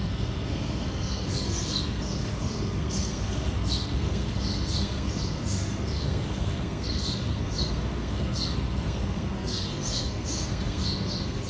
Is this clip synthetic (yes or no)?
yes